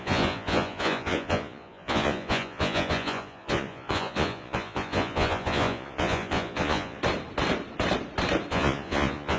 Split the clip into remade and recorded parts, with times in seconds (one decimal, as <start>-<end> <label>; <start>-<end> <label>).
0.0-7.0 remade; 7.0-8.5 recorded; 8.5-9.4 remade